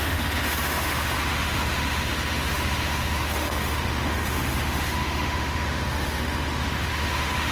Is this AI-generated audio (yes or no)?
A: yes